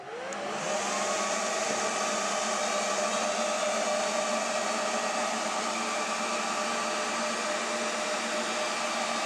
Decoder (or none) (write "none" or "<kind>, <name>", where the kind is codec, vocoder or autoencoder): none